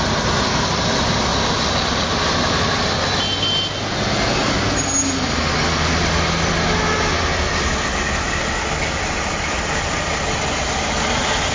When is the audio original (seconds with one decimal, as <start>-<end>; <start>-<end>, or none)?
0.0-11.5